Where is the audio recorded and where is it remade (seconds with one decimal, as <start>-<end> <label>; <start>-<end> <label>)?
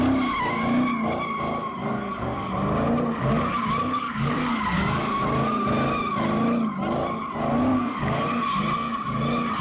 0.0-1.8 recorded; 1.8-2.5 remade; 2.5-3.2 recorded; 3.2-5.2 remade; 5.2-7.7 recorded; 7.7-8.6 remade; 8.6-9.6 recorded